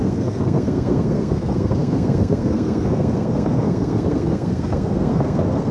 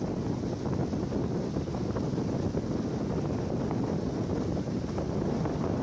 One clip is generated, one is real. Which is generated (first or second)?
first